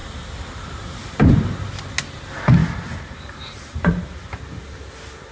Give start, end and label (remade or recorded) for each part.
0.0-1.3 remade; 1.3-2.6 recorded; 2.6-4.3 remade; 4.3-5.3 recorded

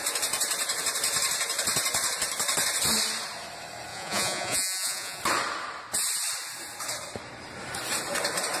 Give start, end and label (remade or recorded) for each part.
0.0-3.9 recorded; 3.9-5.2 remade; 5.2-8.6 recorded